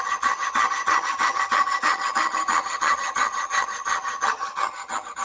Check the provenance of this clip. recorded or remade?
remade